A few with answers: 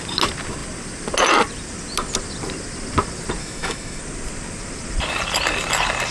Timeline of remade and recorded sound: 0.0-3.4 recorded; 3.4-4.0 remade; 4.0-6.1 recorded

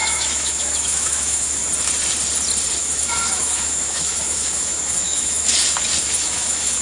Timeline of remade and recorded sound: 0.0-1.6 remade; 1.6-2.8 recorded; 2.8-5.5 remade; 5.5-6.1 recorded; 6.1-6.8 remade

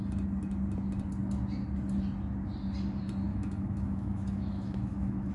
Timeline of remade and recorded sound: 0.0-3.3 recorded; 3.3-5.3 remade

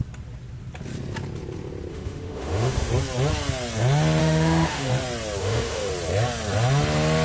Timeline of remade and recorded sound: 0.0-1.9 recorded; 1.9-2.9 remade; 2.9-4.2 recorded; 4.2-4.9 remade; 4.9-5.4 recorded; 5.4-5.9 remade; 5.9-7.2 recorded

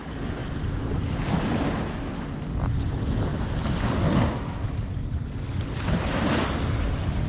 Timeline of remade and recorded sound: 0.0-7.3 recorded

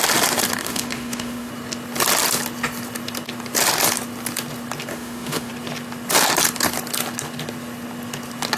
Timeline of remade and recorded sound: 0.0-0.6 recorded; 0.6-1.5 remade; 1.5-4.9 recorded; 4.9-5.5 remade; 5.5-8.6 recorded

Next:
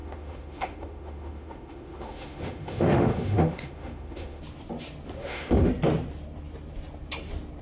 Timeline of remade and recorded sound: 0.0-4.4 remade; 4.4-5.2 recorded; 5.2-5.7 remade; 5.7-7.6 recorded